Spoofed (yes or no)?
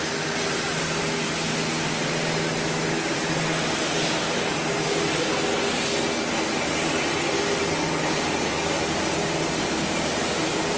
no